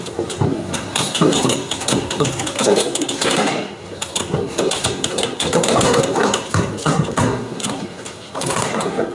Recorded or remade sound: remade